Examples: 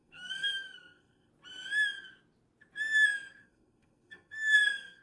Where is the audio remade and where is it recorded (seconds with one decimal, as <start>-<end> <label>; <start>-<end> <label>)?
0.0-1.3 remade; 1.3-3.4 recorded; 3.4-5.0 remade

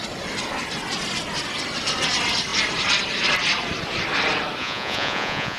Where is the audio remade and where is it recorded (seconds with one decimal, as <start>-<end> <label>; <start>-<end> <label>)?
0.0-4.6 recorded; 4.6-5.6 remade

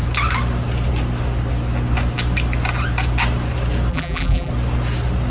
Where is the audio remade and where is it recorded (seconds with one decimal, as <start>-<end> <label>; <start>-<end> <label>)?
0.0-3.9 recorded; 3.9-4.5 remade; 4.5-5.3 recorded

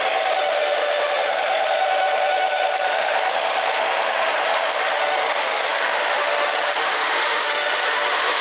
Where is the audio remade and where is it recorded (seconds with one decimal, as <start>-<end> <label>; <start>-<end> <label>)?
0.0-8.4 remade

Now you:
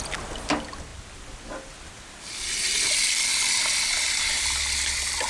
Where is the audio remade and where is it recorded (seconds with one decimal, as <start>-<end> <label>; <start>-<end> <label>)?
0.0-5.3 recorded

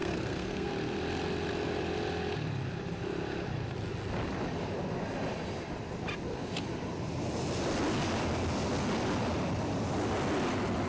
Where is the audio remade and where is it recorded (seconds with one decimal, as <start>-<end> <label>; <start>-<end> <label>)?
0.0-0.7 remade; 0.7-10.9 recorded

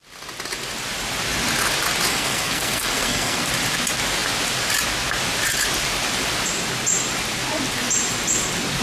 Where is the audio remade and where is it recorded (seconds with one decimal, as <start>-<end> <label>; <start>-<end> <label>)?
0.0-2.1 recorded; 2.1-3.5 remade; 3.5-8.8 recorded